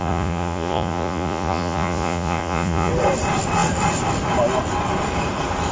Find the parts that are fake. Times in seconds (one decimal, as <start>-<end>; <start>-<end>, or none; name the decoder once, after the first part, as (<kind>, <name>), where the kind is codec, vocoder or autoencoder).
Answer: 0.0-2.9 (vocoder, Vocos)